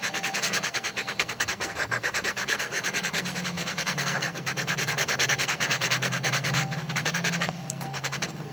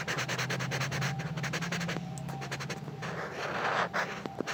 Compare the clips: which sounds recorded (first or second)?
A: second